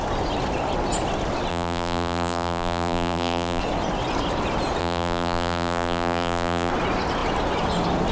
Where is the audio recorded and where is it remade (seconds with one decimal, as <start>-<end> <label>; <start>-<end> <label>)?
0.0-1.5 recorded; 1.5-3.6 remade; 3.6-4.8 recorded; 4.8-6.7 remade; 6.7-8.1 recorded